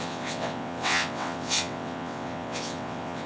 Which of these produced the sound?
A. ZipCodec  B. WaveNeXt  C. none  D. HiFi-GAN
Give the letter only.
B